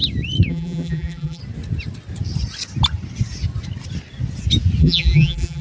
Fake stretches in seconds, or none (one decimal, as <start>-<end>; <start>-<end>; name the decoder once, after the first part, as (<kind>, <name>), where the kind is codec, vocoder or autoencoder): 0.5-1.4 (vocoder, BigVGAN v2); 4.8-5.6